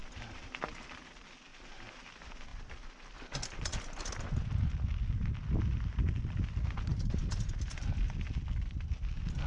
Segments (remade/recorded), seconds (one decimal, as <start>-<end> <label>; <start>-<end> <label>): 0.0-1.5 recorded; 1.5-2.1 remade; 2.1-2.5 recorded; 2.5-4.0 remade; 4.0-6.9 recorded; 6.9-7.5 remade; 7.5-9.5 recorded